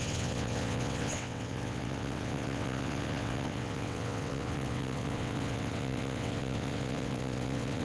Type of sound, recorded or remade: remade